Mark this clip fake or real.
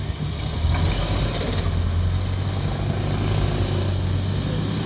real